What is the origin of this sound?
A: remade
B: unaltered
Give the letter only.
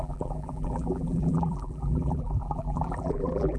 A